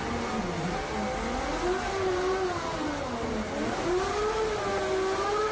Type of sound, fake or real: real